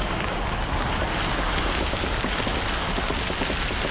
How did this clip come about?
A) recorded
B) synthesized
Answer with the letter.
A